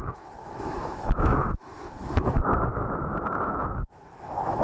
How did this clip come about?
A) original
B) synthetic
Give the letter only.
B